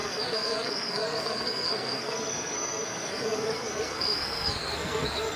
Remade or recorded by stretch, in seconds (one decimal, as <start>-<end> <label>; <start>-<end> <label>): 0.0-5.4 remade